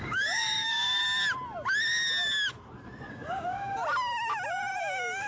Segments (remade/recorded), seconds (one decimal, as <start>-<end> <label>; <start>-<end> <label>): 0.0-1.0 remade; 1.0-3.1 recorded; 3.1-3.8 remade; 3.8-4.8 recorded; 4.8-5.3 remade